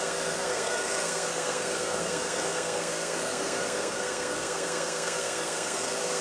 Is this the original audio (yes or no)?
no